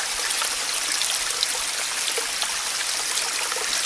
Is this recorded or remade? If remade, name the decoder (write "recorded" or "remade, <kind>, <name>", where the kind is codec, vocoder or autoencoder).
recorded